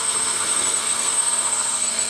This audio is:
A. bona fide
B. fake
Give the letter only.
B